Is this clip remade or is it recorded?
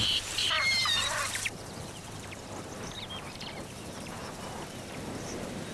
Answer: remade